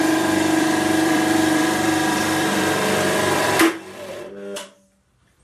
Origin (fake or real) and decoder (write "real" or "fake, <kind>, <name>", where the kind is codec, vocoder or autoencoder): fake, vocoder, BigVGAN v2